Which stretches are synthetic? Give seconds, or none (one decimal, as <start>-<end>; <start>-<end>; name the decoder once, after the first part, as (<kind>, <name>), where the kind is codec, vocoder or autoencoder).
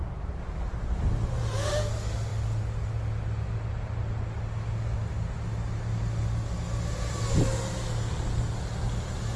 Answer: none